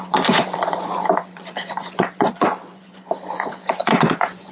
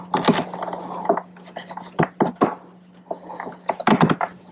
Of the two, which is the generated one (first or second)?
first